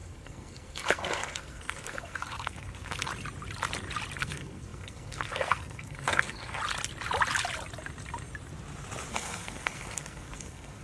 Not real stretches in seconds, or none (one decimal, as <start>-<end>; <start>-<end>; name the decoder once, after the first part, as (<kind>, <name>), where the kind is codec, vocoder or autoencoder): 0.0-3.1 (codec, SNAC); 4.2-6.6; 9.1-10.8